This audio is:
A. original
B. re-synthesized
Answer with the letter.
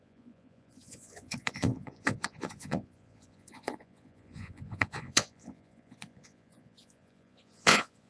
B